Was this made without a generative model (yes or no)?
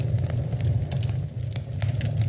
yes